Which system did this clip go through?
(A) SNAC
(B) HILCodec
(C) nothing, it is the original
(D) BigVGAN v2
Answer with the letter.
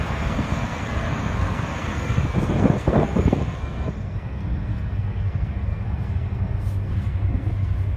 A